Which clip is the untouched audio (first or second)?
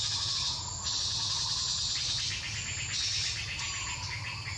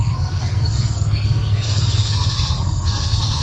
first